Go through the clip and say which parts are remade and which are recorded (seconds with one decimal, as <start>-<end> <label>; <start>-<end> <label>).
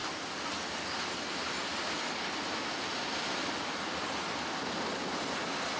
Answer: 0.0-5.8 recorded